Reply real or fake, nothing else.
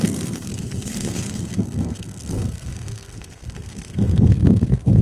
fake